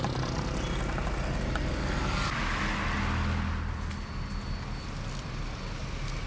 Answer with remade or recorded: recorded